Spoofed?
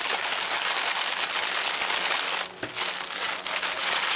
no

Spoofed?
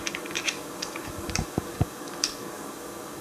yes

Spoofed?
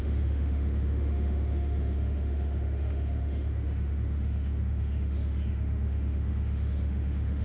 yes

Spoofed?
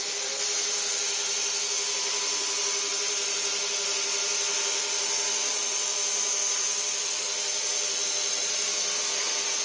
yes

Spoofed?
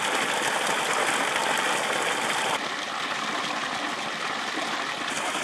no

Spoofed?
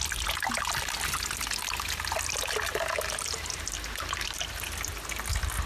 no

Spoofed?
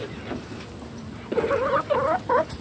no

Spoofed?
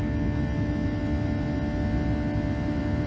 no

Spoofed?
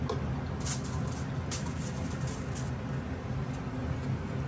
no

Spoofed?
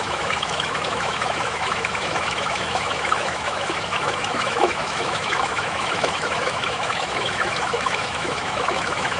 yes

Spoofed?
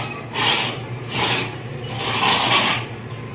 no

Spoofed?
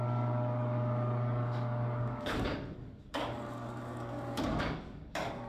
yes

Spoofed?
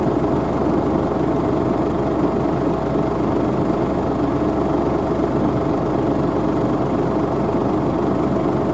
no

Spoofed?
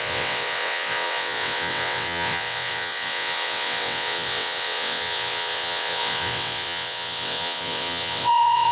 yes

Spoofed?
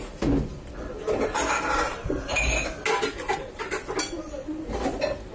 no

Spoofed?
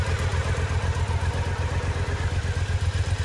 no